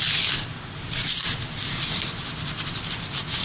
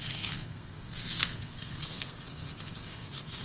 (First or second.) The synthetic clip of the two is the second